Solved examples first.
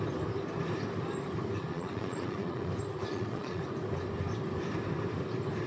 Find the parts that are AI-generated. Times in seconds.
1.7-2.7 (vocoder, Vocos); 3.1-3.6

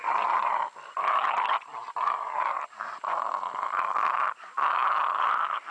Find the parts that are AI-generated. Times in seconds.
none

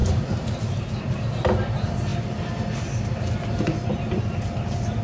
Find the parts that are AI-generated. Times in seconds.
none

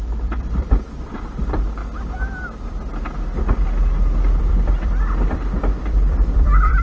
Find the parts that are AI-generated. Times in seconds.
0.0-1.8 (vocoder, BigVGAN v2); 4.4-6.8

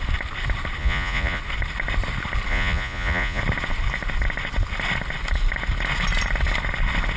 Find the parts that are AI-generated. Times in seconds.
0.8-1.4 (vocoder, Vocos); 2.5-3.4